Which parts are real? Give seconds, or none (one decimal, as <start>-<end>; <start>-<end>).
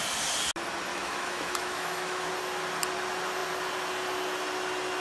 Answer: 0.0-0.9; 2.3-5.0